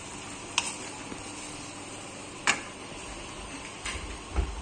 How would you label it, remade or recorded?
recorded